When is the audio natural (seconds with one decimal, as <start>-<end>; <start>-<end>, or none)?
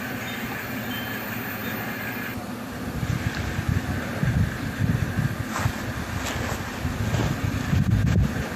0.0-8.6